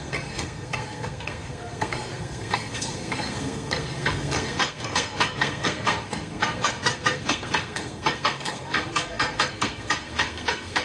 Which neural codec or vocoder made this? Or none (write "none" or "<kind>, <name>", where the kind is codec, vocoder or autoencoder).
codec, SNAC